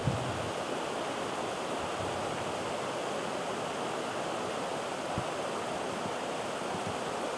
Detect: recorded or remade recorded